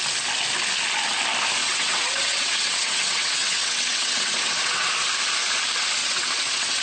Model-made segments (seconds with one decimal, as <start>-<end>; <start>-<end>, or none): 1.6-4.9; 6.0-6.8